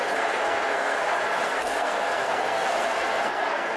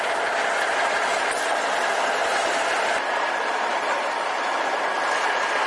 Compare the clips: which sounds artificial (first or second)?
first